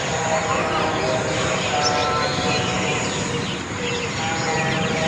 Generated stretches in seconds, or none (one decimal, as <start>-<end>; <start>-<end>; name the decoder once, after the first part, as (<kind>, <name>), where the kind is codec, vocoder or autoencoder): 2.0-3.1 (vocoder, BigVGAN v2)